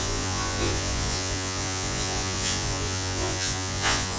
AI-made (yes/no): yes